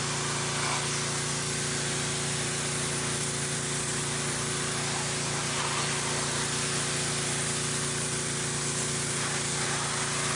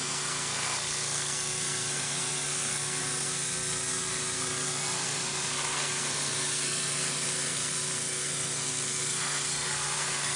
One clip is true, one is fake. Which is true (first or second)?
first